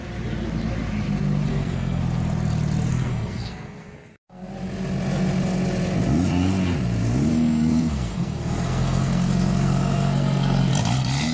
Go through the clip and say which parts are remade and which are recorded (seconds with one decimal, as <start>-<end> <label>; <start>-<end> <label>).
0.0-1.5 recorded; 1.5-2.0 remade; 2.0-2.9 recorded; 2.9-4.5 remade; 4.5-7.3 recorded; 7.3-10.7 remade; 10.7-11.3 recorded